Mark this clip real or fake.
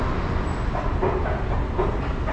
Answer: real